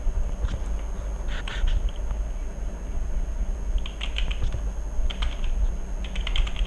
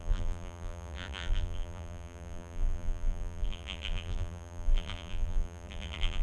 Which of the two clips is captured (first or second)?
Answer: first